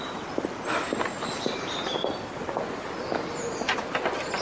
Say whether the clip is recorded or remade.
recorded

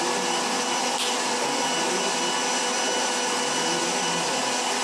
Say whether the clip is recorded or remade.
recorded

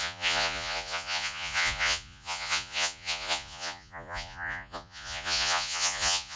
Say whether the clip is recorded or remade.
remade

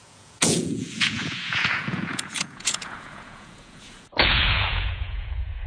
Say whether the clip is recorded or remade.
remade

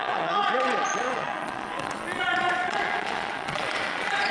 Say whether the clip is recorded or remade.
remade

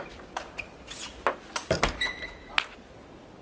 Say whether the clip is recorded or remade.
recorded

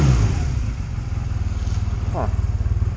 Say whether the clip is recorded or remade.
recorded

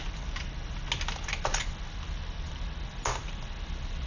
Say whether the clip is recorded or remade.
recorded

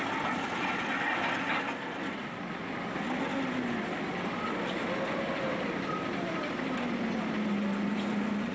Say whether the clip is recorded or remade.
recorded